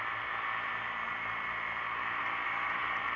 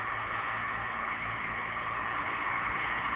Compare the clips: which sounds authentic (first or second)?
first